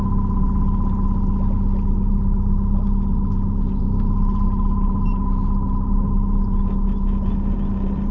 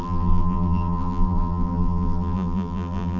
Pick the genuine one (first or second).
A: first